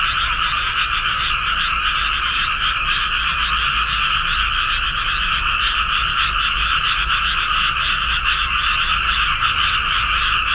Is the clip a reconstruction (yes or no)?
no